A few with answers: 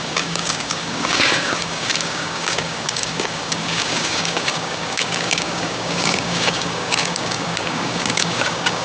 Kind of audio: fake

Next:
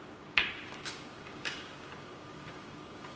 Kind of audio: fake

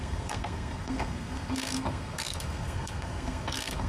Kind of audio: fake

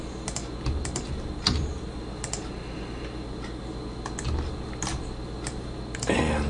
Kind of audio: real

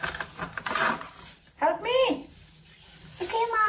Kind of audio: real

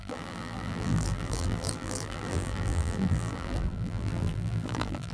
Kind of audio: fake